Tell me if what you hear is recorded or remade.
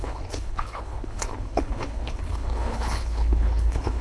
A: remade